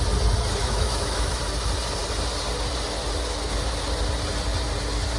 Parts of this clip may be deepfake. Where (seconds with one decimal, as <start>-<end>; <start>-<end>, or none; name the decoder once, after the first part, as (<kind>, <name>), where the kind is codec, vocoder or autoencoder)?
0.6-1.4 (autoencoder, DAC-VAE)